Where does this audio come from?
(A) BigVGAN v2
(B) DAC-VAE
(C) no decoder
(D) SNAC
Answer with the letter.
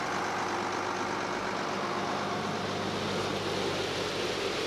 C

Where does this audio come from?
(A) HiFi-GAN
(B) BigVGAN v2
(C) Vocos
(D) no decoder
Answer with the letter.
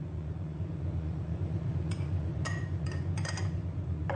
C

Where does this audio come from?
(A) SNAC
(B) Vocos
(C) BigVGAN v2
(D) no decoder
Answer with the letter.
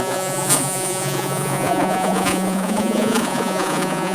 B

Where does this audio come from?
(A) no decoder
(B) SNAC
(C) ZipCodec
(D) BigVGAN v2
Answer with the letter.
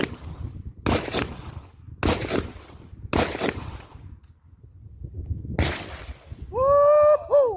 A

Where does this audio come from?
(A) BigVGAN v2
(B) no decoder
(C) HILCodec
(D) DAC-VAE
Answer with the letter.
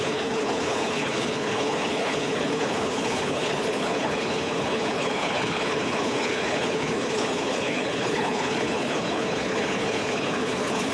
C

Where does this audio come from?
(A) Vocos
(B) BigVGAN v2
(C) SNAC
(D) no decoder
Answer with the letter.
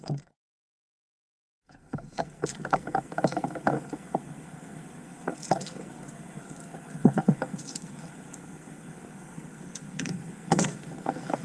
C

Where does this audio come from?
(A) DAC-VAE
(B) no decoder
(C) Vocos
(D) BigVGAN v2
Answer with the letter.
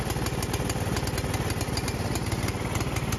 B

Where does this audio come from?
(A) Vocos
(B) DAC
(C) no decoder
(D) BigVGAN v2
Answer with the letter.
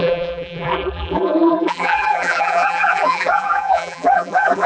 D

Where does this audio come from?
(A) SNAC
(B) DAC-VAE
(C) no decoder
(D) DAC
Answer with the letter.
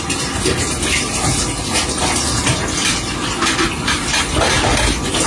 C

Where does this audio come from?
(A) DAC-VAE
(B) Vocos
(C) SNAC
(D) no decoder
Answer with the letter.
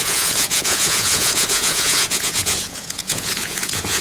B